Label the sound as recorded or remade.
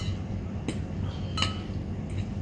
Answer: recorded